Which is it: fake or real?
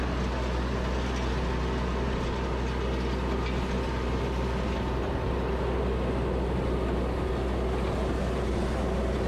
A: real